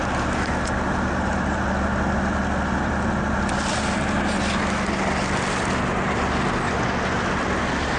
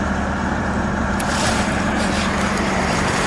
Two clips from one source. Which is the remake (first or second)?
second